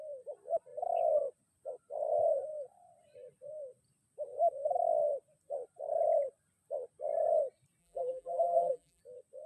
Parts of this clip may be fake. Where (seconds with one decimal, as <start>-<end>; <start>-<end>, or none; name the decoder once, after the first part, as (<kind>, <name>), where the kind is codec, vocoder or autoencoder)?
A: 7.8-9.0 (vocoder, BigVGAN v2)